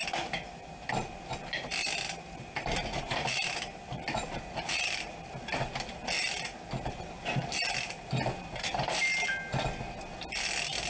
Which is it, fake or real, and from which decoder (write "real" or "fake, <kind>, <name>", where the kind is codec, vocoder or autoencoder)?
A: real